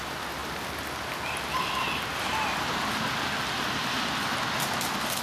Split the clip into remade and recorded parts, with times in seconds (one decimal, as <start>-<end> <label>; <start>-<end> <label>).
0.0-5.2 recorded